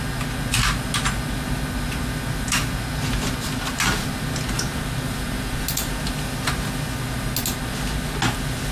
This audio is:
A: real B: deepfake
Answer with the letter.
A